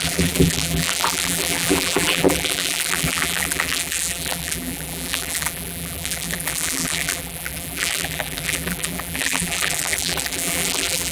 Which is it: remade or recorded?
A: remade